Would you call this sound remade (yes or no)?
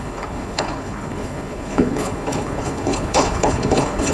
yes